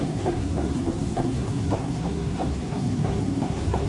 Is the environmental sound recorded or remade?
remade